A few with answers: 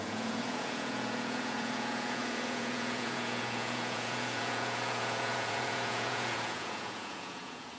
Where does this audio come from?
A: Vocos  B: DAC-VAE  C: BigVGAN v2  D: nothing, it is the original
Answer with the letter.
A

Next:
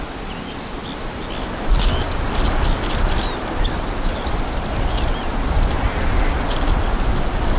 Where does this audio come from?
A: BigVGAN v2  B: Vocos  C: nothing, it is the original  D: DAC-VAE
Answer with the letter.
C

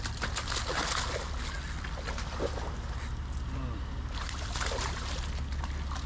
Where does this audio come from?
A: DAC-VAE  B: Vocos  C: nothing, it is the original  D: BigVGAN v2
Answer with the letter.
C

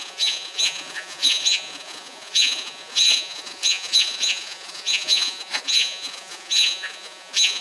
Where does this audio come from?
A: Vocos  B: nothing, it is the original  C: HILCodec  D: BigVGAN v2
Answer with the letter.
A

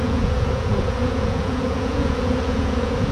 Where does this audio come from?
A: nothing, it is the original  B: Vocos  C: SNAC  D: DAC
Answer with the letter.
B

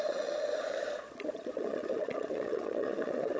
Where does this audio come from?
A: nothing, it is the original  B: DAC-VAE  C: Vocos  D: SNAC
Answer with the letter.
C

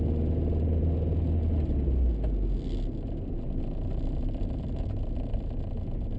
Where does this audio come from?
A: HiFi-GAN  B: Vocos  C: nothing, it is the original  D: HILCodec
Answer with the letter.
C